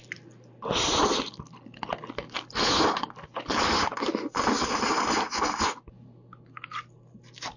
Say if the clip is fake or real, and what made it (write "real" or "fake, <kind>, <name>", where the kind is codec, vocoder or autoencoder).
real